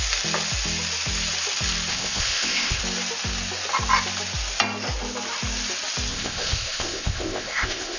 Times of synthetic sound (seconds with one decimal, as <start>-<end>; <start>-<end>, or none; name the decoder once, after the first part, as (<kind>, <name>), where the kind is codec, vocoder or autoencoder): 1.9-2.8 (codec, ZipCodec); 6.1-8.0